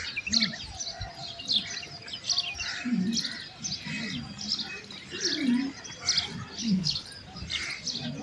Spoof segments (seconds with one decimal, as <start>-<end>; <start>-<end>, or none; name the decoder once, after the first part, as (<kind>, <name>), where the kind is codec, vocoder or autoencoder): 6.6-7.1 (codec, HILCodec)